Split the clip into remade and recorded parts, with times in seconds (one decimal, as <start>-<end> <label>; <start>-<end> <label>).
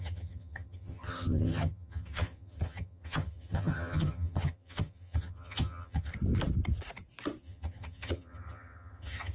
0.0-6.1 remade; 6.1-7.4 recorded; 7.4-9.3 remade